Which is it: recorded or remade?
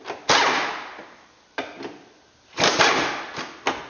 recorded